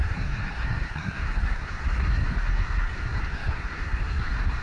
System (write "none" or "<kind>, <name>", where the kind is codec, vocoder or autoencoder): codec, SNAC